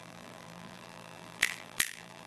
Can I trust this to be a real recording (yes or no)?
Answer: no